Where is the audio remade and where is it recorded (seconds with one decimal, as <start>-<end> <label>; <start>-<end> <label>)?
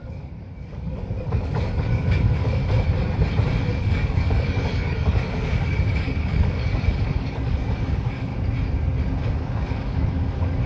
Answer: 0.0-2.6 remade; 2.6-3.6 recorded; 3.6-8.3 remade; 8.3-9.2 recorded; 9.2-10.7 remade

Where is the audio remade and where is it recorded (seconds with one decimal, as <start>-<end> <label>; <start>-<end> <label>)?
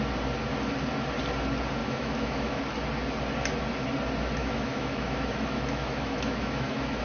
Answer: 0.0-1.8 recorded; 1.8-2.6 remade; 2.6-4.4 recorded; 4.4-7.0 remade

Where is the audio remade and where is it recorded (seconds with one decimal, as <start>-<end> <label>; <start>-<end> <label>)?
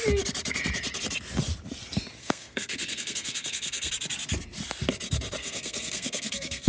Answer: 0.0-2.2 recorded; 2.2-3.9 remade; 3.9-5.4 recorded; 5.4-6.7 remade